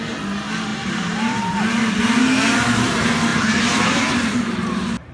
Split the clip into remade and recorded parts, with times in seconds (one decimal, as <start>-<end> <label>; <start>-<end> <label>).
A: 0.0-0.7 recorded; 0.7-2.9 remade; 2.9-3.3 recorded; 3.3-5.1 remade